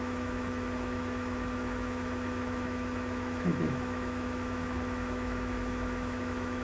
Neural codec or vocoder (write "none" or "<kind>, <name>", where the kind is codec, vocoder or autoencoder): autoencoder, DAC-VAE